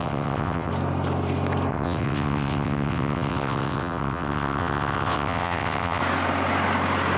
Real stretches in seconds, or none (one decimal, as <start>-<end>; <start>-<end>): 0.7-1.7; 6.0-7.2